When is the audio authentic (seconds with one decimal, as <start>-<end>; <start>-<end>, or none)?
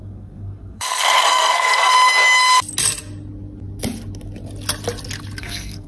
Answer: 1.9-5.4